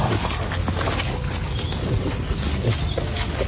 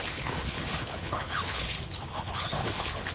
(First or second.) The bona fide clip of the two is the first